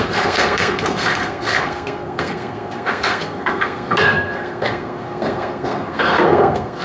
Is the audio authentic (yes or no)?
no